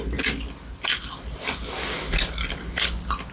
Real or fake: real